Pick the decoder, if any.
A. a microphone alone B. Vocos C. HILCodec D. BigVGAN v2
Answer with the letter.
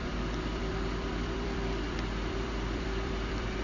D